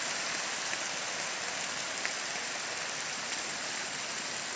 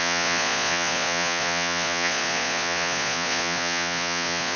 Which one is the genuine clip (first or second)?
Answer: first